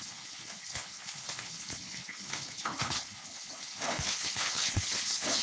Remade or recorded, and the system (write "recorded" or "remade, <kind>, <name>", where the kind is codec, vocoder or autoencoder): remade, codec, HILCodec